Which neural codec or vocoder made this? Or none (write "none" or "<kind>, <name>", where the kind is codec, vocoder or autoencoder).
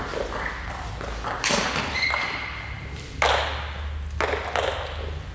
none